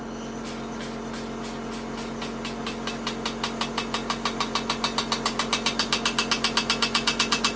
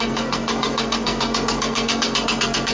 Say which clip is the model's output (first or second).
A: second